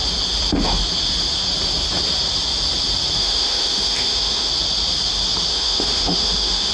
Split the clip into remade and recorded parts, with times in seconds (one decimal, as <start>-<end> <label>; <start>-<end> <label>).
0.0-3.2 recorded; 3.2-4.5 remade; 4.5-5.5 recorded; 5.5-6.7 remade